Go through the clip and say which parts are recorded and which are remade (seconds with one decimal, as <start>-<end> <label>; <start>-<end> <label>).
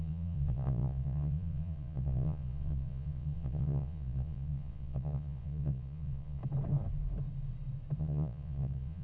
0.0-6.4 remade; 6.4-8.0 recorded; 8.0-9.0 remade